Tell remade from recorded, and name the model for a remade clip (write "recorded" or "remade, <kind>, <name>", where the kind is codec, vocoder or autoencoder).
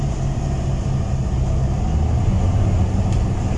recorded